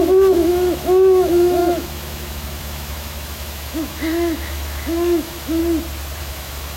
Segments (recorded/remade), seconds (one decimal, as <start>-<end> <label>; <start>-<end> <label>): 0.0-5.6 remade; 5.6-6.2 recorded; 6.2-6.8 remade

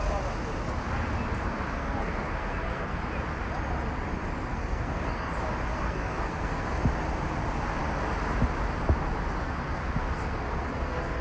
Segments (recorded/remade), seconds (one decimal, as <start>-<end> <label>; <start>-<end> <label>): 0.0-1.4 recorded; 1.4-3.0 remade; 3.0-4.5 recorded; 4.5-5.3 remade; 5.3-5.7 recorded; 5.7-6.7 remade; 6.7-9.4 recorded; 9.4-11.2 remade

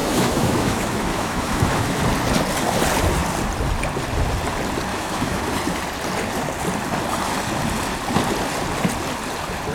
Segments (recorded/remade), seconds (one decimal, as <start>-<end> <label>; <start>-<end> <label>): 0.0-2.0 remade; 2.0-4.9 recorded; 4.9-5.4 remade; 5.4-9.7 recorded